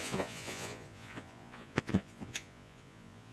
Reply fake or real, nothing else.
fake